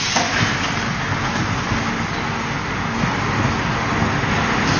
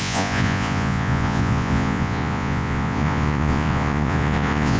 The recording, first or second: first